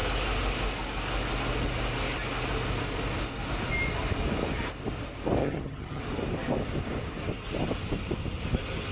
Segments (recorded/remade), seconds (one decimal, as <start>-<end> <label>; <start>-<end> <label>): 0.0-5.4 recorded; 5.4-6.0 remade; 6.0-8.9 recorded